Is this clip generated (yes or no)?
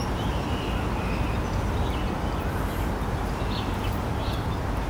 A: no